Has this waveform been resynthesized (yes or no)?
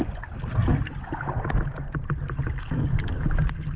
no